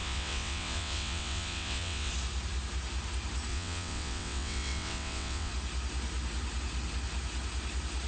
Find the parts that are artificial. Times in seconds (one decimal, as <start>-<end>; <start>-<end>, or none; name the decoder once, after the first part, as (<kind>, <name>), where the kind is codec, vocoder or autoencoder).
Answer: 0.0-2.1 (vocoder, WaveNeXt); 3.5-5.5